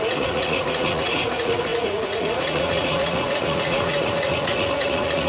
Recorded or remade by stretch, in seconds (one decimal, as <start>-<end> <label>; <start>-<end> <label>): 0.0-5.3 remade

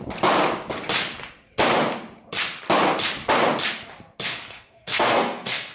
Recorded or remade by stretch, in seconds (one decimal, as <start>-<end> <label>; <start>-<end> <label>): 0.0-4.3 recorded; 4.3-5.7 remade

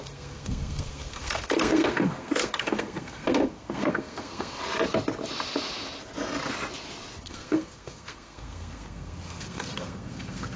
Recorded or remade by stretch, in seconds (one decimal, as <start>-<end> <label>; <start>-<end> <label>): 0.0-4.6 remade; 4.6-7.2 recorded; 7.2-10.6 remade

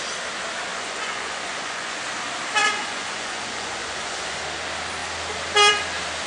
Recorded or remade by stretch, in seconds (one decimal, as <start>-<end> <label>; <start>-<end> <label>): 0.0-0.7 recorded; 0.7-2.0 remade; 2.0-2.6 recorded; 2.6-4.4 remade; 4.4-6.3 recorded

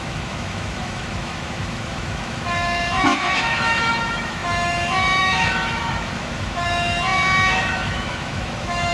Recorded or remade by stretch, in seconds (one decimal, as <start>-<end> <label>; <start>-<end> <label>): 0.0-8.9 remade

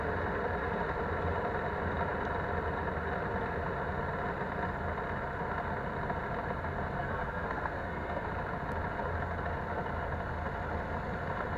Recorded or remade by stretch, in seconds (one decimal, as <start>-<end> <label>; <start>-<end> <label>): 0.0-7.0 recorded; 7.0-8.3 remade; 8.3-11.6 recorded